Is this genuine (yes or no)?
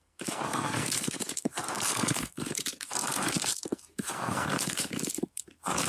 no